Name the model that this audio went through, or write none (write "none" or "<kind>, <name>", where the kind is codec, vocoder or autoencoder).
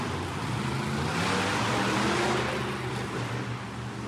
none